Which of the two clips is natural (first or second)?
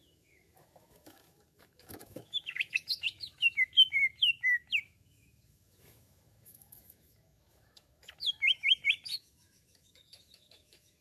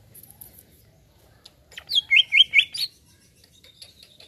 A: second